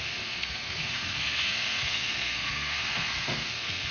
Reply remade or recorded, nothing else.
remade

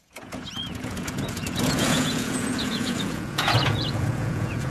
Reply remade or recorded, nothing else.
remade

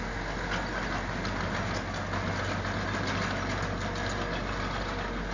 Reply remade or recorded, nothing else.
recorded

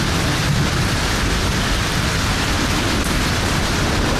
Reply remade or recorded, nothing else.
recorded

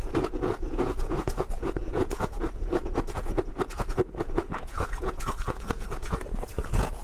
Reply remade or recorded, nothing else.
remade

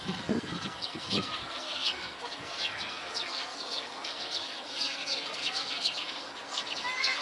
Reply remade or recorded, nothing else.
remade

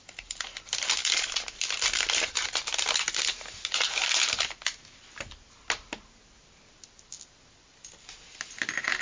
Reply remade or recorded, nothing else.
recorded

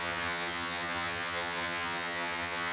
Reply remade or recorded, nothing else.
remade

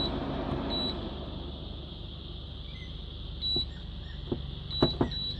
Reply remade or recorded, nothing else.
recorded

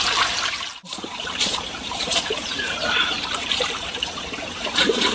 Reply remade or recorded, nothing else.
remade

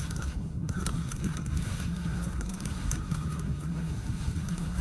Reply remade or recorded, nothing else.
remade